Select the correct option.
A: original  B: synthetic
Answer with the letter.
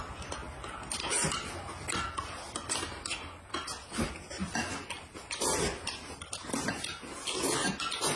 A